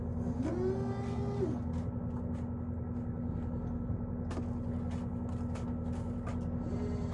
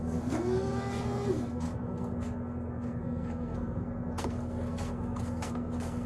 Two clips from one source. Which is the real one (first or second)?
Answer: first